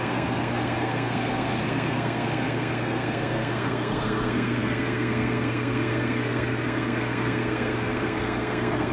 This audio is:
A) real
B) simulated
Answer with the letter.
B